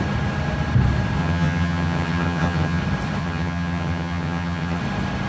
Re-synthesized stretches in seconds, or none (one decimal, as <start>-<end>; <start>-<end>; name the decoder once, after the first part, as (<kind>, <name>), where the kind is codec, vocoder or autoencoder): 1.2-2.8 (vocoder, HiFi-GAN); 3.2-4.8